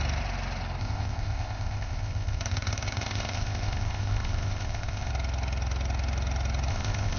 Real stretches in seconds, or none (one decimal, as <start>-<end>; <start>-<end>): 0.0-0.8; 5.1-6.7